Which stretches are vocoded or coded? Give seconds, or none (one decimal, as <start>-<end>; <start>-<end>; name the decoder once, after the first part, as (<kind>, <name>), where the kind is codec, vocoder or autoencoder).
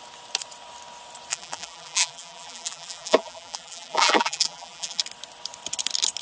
1.3-5.0 (vocoder, BigVGAN v2)